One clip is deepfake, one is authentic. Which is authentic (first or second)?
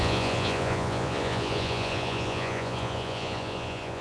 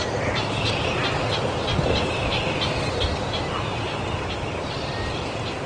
second